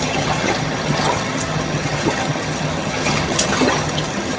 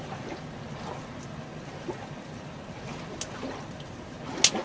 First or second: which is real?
second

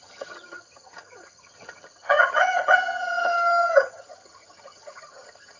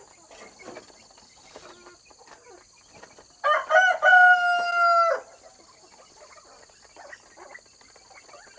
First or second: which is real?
second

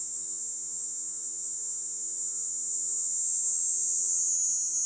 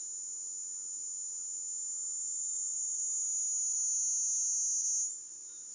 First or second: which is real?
second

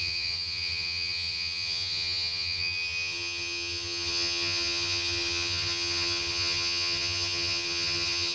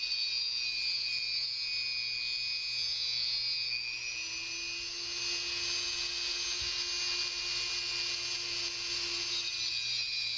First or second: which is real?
second